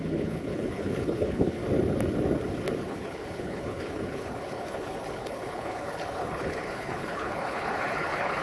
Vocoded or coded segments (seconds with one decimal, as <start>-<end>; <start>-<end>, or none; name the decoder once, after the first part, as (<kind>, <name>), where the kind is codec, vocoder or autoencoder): 0.0-1.6 (codec, HILCodec); 2.8-8.4